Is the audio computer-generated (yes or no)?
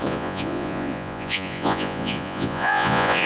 yes